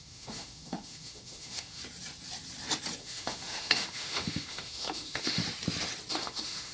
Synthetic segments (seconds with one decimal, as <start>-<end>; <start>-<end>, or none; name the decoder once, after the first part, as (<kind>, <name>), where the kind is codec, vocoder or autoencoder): 0.0-1.8 (autoencoder, DAC-VAE); 3.0-5.4; 6.1-6.7

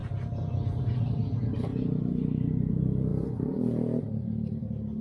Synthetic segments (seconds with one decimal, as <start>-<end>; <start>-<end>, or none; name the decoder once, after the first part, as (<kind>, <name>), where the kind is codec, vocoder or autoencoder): 0.8-1.7 (vocoder, BigVGAN v2); 2.7-3.1; 4.0-5.0